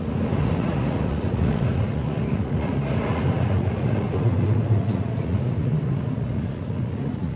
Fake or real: fake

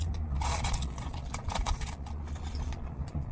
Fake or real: fake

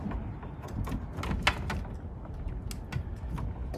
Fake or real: real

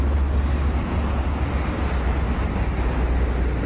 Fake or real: real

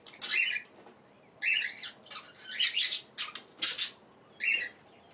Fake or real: real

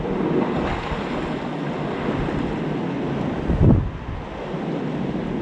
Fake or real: real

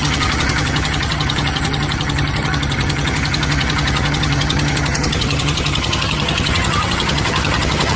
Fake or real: fake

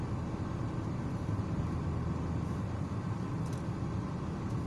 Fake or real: real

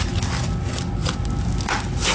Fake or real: real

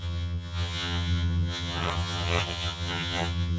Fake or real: fake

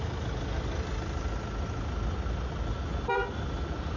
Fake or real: real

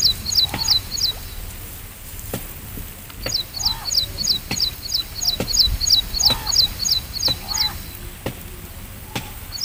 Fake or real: real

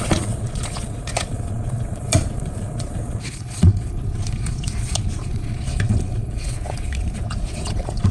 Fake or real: fake